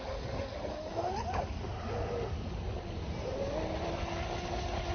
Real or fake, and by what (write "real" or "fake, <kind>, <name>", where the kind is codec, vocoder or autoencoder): real